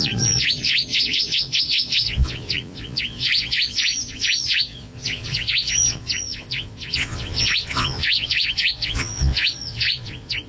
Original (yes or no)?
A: no